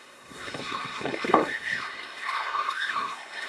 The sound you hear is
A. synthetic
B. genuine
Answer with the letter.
A